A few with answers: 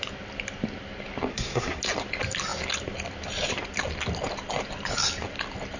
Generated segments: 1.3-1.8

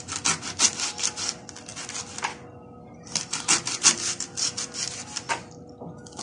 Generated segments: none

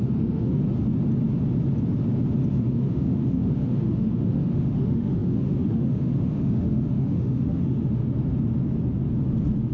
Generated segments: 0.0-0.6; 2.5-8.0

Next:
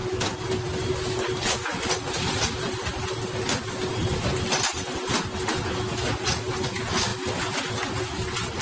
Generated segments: none

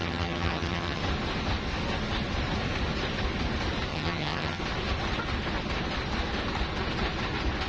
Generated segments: 0.0-1.0; 3.9-4.6

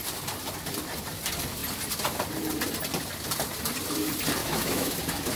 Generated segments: 4.4-5.0